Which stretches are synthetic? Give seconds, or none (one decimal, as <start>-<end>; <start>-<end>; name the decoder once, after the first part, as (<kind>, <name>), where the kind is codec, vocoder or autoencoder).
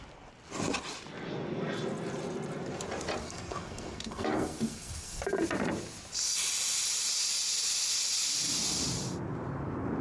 3.2-5.2 (codec, SNAC)